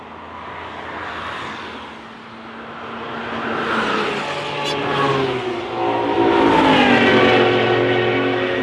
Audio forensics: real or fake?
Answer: real